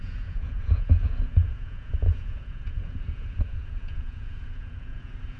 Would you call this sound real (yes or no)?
no